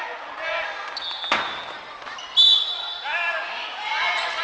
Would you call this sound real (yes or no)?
yes